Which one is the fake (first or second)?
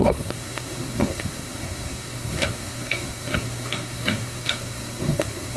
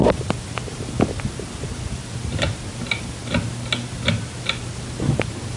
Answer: first